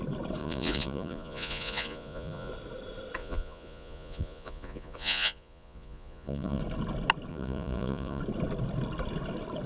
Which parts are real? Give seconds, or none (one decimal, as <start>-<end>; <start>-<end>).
0.0-0.4; 2.5-3.2; 6.6-7.3; 8.2-9.7